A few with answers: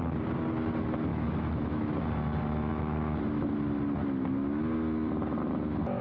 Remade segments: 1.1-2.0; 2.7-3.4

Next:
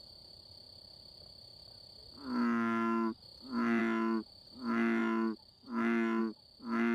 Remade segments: none

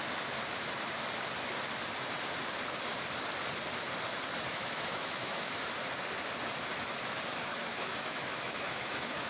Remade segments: 4.5-5.6; 7.5-9.3

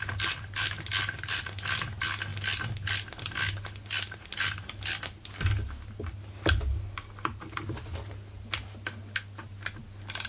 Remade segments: none